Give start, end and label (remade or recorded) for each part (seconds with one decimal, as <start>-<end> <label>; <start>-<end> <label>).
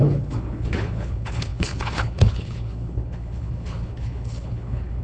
0.0-5.0 remade